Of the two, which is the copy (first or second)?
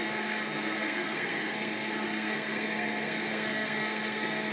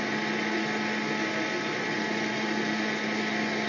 first